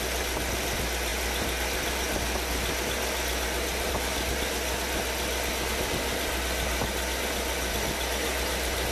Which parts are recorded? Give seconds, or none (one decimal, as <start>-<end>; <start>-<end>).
0.0-8.9